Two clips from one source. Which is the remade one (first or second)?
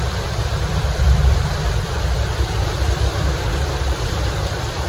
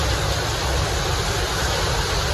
first